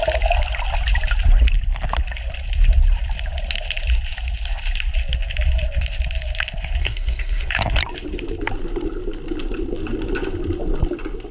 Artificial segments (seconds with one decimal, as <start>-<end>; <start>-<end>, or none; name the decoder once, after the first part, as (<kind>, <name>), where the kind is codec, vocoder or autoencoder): 6.8-7.5 (codec, SNAC)